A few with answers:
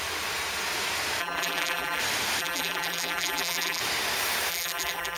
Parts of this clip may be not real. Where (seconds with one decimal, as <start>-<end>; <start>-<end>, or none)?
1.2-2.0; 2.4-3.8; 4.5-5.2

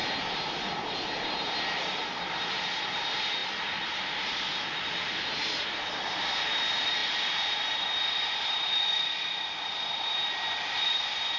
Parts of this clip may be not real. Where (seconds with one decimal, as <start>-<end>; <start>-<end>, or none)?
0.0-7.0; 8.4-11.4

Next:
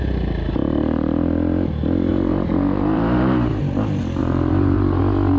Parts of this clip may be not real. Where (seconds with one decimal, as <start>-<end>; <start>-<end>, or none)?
2.1-3.6; 4.2-5.0

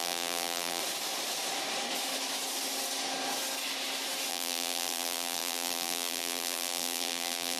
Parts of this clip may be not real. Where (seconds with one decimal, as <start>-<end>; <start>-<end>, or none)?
0.0-0.8; 4.3-7.6

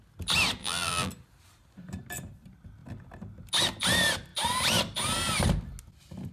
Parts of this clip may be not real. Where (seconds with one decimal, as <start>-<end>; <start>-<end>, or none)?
0.6-1.1

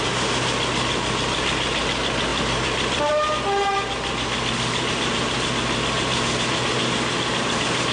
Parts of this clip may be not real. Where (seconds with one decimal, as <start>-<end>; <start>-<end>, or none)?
2.3-3.3